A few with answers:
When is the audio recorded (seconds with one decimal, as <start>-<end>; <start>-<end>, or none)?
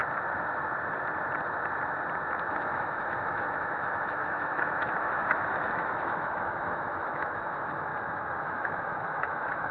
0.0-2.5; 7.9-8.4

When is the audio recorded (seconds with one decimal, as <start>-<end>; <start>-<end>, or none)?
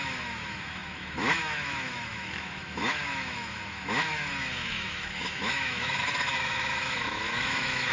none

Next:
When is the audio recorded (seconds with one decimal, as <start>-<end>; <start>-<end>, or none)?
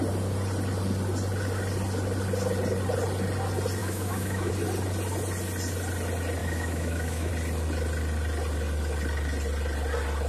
0.0-3.8; 4.5-6.4; 7.3-10.3